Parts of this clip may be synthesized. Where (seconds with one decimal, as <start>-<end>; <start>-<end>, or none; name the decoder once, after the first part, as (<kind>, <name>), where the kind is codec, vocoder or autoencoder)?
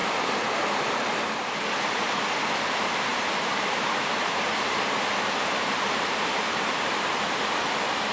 0.0-1.2 (vocoder, BigVGAN v2); 3.1-7.4